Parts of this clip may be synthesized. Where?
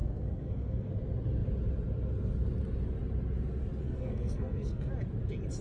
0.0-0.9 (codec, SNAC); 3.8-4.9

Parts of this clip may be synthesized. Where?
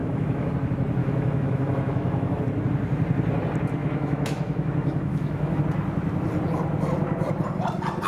0.0-0.5 (autoencoder, DAC-VAE); 1.0-2.4; 3.8-5.6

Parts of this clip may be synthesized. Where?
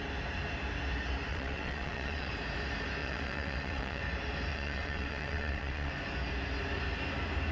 1.3-2.3 (vocoder, WaveNeXt); 3.0-4.0; 4.5-5.9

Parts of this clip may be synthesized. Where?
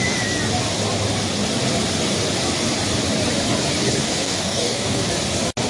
4.0-5.1 (codec, DAC)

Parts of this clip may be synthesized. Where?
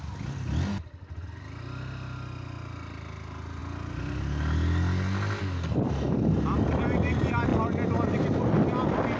none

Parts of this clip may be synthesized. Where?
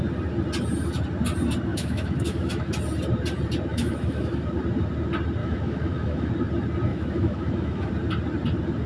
1.7-2.7 (autoencoder, DAC-VAE); 3.7-4.4; 5.4-6.3; 6.9-7.9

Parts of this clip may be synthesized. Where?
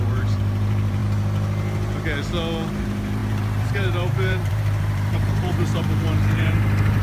0.0-1.0 (vocoder, BigVGAN v2); 2.7-7.0